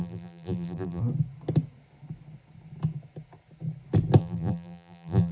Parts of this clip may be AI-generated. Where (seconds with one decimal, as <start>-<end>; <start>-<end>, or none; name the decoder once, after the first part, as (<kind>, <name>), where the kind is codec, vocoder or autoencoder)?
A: 0.0-1.0 (vocoder, BigVGAN v2); 4.2-5.3